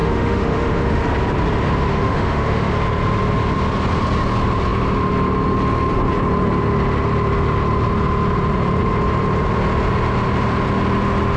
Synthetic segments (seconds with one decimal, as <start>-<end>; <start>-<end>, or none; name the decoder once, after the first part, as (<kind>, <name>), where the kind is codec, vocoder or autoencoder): 0.0-1.0 (autoencoder, DAC-VAE); 1.9-2.7